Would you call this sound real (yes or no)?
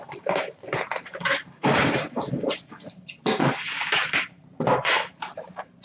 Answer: no